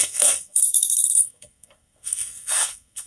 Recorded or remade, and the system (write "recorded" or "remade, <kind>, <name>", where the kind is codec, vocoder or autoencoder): remade, codec, SNAC